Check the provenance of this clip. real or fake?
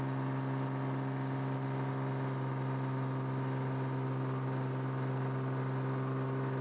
real